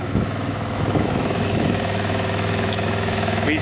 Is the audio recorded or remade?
remade